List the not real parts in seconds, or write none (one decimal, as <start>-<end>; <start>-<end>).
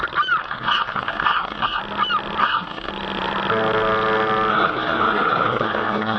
0.4-1.8; 2.4-2.9; 4.5-6.2